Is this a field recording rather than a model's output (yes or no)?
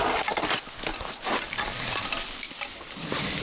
yes